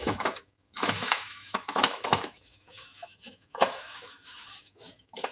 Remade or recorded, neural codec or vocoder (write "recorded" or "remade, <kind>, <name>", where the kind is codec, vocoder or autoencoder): remade, autoencoder, DAC-VAE